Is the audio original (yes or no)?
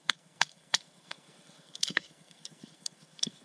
no